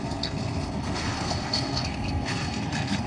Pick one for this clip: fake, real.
fake